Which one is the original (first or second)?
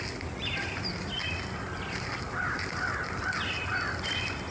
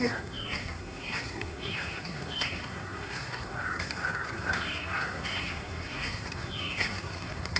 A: first